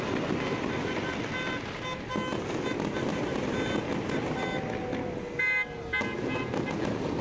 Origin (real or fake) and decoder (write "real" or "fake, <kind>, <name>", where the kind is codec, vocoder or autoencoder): real